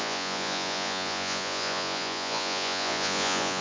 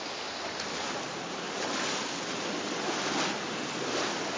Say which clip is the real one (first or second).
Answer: second